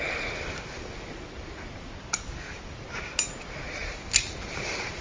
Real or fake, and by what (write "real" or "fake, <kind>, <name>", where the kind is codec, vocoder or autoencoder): real